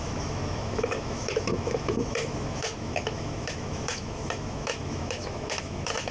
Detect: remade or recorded remade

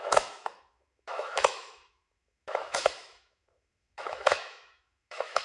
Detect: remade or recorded remade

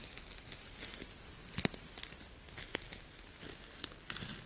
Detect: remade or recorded recorded